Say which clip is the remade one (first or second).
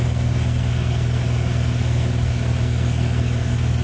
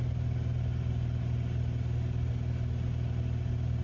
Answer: first